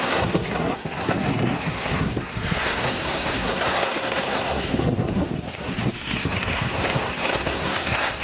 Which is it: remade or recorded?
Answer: remade